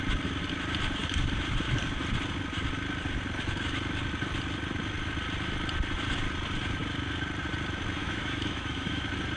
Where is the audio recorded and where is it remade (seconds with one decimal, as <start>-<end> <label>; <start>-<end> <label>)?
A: 0.0-8.0 recorded; 8.0-9.0 remade; 9.0-9.4 recorded